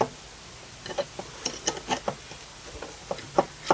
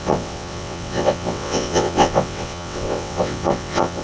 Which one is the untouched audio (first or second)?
first